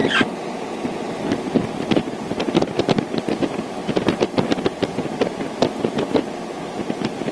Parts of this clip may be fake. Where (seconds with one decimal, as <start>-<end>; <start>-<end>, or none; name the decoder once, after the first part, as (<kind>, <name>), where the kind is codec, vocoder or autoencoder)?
none